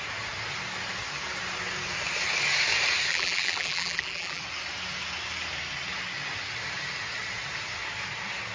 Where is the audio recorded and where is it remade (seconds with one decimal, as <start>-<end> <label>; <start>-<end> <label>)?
0.0-3.1 recorded; 3.1-4.4 remade; 4.4-8.5 recorded